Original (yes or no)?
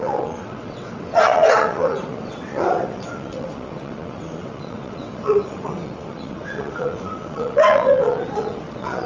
no